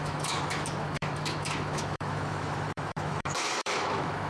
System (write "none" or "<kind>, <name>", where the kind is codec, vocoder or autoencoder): autoencoder, DAC-VAE